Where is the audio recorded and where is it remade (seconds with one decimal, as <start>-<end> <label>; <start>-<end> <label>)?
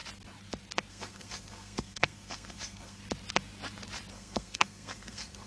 0.0-0.9 recorded; 0.9-3.0 remade; 3.0-4.1 recorded; 4.1-5.5 remade